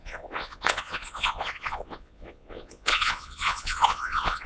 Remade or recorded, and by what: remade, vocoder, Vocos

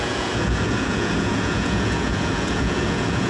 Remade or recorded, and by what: remade, vocoder, Vocos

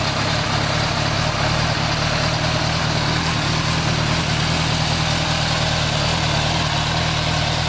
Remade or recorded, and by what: recorded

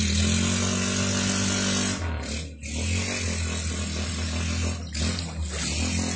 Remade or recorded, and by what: recorded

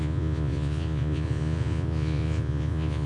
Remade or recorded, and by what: remade, vocoder, Vocos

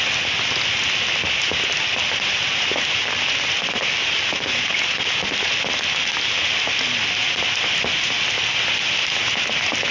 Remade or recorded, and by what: recorded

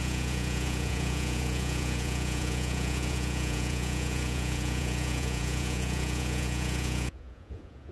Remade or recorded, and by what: remade, vocoder, Vocos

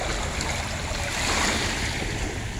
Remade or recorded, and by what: recorded